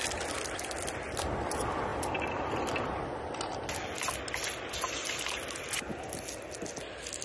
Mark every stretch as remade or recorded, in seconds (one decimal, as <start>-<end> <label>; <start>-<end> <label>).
0.0-7.2 recorded